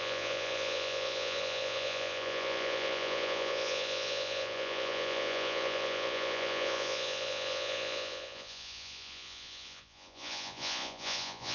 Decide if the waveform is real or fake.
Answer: fake